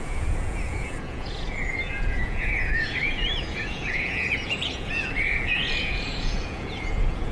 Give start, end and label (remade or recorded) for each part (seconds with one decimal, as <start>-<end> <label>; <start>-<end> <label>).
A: 0.0-7.3 remade